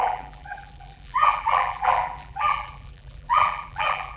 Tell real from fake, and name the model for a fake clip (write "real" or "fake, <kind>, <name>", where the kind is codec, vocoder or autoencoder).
fake, vocoder, BigVGAN v2